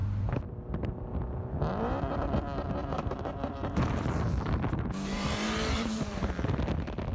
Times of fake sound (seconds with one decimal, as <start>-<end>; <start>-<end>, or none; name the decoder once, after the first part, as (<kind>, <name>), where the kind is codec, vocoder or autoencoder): 2.8-6.3 (vocoder, BigVGAN v2)